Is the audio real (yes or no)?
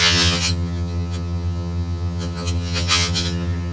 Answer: no